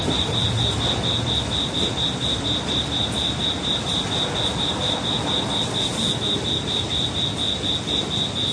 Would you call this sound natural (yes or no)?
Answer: yes